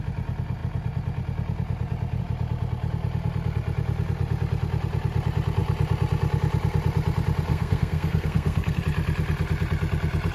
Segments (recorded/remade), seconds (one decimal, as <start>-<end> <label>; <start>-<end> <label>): 0.0-7.5 recorded; 7.5-8.8 remade; 8.8-10.3 recorded